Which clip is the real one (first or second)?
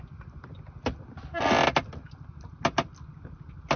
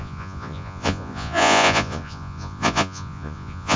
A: first